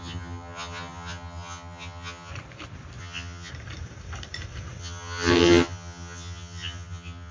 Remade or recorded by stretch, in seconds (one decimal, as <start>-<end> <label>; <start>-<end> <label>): 0.0-2.3 remade; 2.3-3.0 recorded; 3.0-3.5 remade; 3.5-4.8 recorded; 4.8-7.3 remade